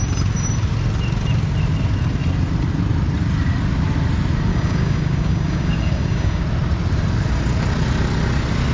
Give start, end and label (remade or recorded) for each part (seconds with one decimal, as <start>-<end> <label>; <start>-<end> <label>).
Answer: 0.0-4.5 recorded; 4.5-6.4 remade; 6.4-8.7 recorded